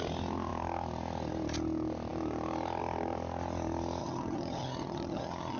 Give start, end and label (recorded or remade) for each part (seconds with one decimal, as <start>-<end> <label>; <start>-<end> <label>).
0.0-4.0 recorded; 4.0-5.6 remade